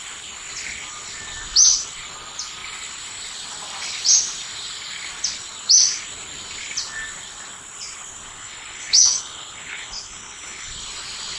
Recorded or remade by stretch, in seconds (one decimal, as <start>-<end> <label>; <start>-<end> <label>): 0.0-8.3 recorded; 8.3-10.8 remade; 10.8-11.4 recorded